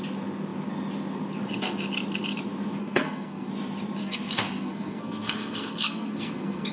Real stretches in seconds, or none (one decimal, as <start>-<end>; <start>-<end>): 0.0-2.8; 3.5-4.0